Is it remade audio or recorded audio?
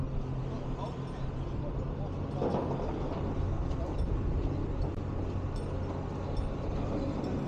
recorded